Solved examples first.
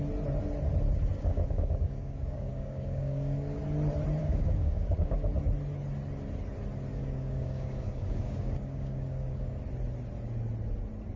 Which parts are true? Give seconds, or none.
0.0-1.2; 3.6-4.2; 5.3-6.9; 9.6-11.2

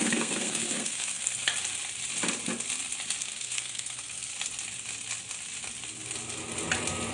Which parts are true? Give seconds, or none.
1.5-3.2; 4.3-7.1

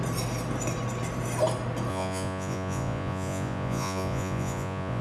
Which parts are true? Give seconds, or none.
0.0-1.9

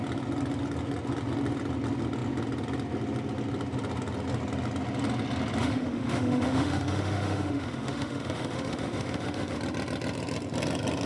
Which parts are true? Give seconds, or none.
0.0-5.6; 9.6-11.1

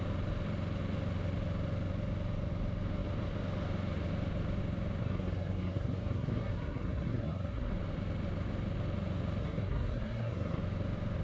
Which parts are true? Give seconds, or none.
0.0-5.0; 7.7-9.4; 10.6-11.2